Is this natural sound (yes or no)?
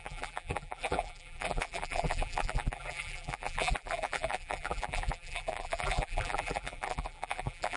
no